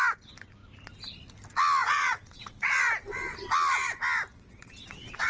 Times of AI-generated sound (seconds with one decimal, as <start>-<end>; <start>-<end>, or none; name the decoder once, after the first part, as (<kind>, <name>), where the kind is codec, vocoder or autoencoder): 1.8-2.7 (vocoder, WaveNeXt); 4.3-5.3